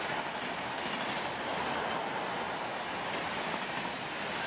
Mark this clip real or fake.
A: real